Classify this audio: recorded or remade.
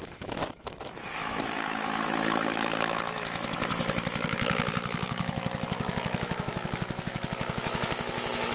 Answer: remade